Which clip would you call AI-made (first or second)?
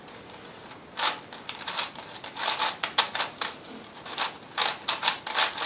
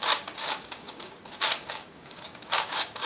second